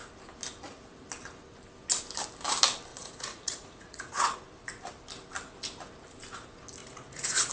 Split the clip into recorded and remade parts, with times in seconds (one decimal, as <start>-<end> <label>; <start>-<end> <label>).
0.0-2.9 recorded; 2.9-4.4 remade; 4.4-6.8 recorded; 6.8-7.5 remade